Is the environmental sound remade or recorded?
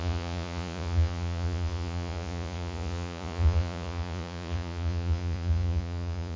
remade